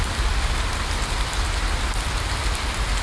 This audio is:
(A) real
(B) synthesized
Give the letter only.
A